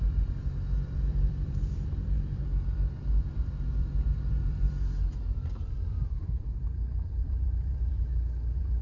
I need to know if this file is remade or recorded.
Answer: remade